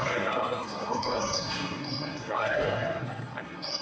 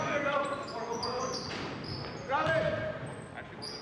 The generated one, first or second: first